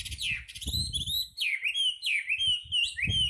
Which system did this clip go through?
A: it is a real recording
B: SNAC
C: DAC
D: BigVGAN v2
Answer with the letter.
A